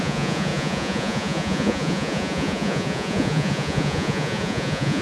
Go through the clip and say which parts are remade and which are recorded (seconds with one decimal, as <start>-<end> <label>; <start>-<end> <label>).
0.0-5.0 remade

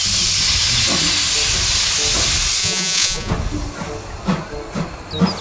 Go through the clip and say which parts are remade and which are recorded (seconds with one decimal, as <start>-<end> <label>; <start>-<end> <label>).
0.0-2.6 recorded; 2.6-3.3 remade; 3.3-5.4 recorded

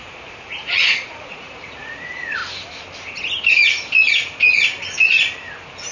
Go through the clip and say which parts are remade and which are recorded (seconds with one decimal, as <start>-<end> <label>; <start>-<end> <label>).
0.0-2.4 remade; 2.4-5.9 recorded

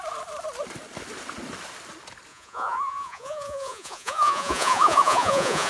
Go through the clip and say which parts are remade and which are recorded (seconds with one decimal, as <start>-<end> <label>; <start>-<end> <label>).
0.0-2.3 recorded; 2.3-5.7 remade

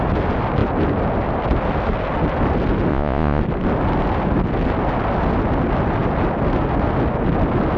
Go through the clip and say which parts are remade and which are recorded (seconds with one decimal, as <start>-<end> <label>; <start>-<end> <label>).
0.0-2.9 recorded; 2.9-3.4 remade; 3.4-7.8 recorded

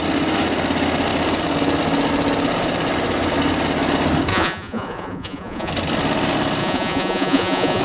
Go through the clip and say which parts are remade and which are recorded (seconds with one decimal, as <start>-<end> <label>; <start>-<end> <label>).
0.0-4.3 recorded; 4.3-5.7 remade; 5.7-6.6 recorded; 6.6-7.8 remade

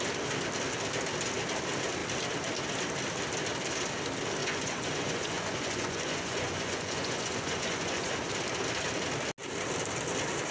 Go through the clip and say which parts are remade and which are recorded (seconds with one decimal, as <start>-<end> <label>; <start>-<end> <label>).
0.0-4.4 recorded; 4.4-8.1 remade; 8.1-10.5 recorded